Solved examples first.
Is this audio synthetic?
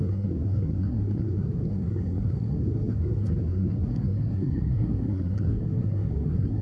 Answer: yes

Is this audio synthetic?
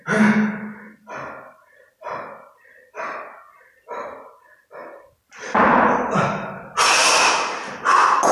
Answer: no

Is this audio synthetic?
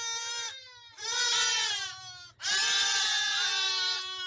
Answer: no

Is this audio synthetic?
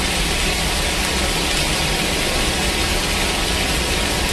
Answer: no